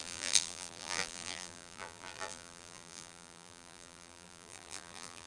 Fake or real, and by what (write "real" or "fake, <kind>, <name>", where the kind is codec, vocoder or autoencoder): fake, vocoder, BigVGAN v2